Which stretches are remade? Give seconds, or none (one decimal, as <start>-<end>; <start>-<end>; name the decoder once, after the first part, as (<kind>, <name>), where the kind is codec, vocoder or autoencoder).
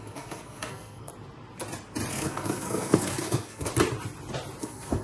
0.0-1.1 (codec, SNAC); 2.1-3.7; 4.6-5.0